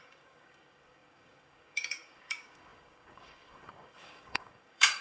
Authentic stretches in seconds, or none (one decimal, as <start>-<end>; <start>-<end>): none